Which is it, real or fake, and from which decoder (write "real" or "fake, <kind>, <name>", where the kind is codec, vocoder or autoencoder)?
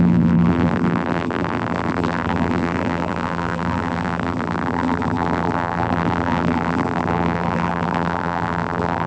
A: fake, vocoder, BigVGAN v2